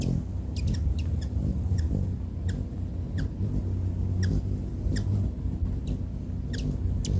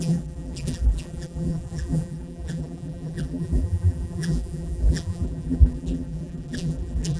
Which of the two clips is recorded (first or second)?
first